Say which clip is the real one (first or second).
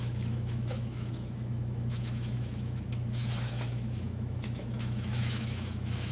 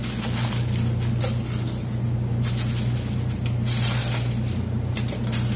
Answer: second